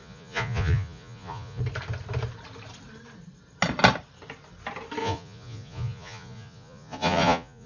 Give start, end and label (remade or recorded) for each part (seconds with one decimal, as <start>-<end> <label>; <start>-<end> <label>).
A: 0.0-1.6 remade; 1.6-5.0 recorded; 5.0-7.7 remade